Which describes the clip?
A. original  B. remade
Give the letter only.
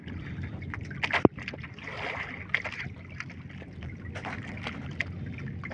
A